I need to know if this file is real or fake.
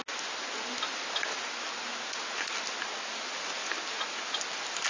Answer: real